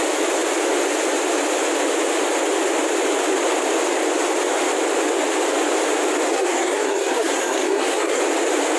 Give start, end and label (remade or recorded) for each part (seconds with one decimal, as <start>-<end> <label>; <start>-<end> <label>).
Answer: 0.0-6.3 recorded; 6.3-8.2 remade; 8.2-8.8 recorded